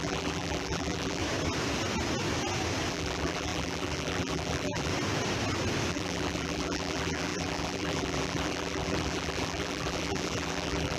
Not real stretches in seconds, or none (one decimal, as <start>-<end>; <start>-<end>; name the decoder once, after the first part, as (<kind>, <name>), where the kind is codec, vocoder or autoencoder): 0.0-1.2 (vocoder, BigVGAN v2); 2.9-4.9; 5.9-11.0